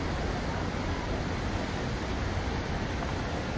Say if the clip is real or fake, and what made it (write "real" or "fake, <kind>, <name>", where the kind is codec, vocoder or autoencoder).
real